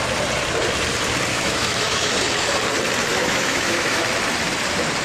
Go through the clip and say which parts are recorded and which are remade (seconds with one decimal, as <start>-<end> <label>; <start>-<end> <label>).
0.0-1.3 recorded; 1.3-2.1 remade; 2.1-3.1 recorded; 3.1-4.0 remade; 4.0-5.0 recorded